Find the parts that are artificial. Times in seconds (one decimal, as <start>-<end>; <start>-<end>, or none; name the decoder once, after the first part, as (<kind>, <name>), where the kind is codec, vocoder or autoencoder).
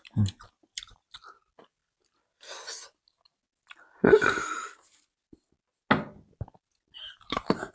none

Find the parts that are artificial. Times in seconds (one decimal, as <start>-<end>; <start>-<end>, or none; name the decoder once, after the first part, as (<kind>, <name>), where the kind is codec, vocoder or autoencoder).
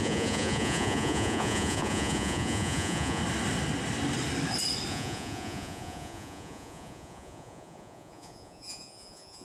0.0-3.2 (vocoder, Vocos); 4.9-9.4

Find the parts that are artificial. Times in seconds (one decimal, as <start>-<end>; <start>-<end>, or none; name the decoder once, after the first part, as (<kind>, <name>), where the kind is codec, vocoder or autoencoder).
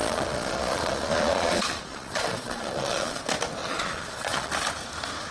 0.0-3.2 (vocoder, Vocos); 3.6-4.5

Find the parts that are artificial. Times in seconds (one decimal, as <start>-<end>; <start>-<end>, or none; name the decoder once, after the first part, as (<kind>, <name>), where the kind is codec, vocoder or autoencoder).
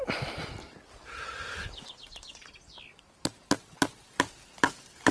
none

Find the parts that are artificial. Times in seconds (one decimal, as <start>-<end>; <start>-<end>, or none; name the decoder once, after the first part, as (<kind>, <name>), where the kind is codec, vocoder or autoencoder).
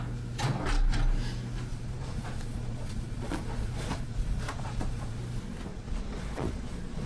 1.7-5.2 (vocoder, Vocos); 5.7-7.1